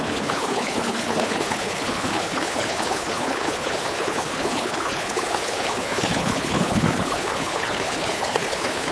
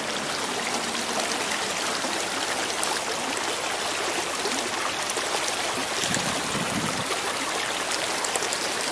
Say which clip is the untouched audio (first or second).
second